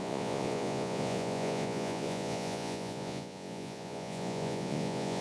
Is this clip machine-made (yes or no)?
yes